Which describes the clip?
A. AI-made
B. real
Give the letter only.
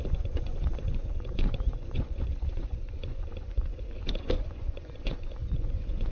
A